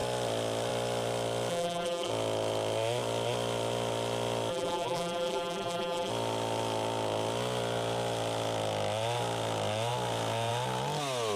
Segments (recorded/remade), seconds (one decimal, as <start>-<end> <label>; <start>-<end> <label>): 0.0-1.5 recorded; 1.5-2.1 remade; 2.1-4.5 recorded; 4.5-6.1 remade; 6.1-11.4 recorded